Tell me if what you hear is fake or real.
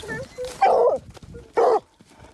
real